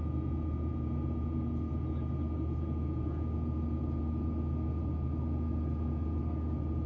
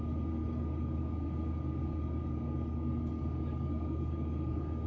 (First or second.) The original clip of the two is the first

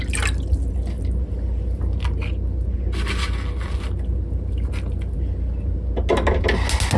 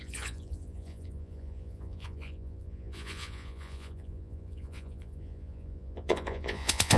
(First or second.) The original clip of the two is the first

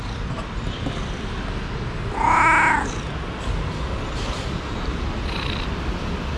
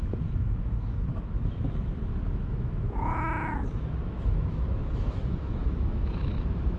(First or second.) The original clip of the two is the first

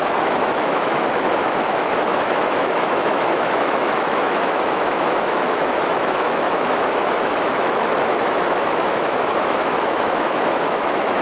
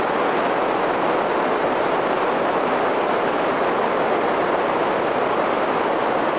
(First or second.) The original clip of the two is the second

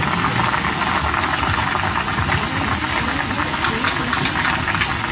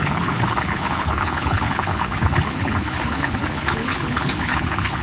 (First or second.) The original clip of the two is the first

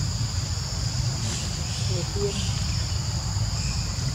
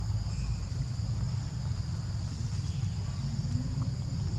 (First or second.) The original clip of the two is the second